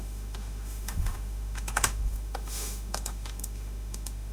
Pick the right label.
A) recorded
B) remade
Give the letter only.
B